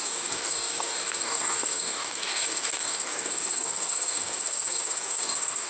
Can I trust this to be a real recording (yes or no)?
no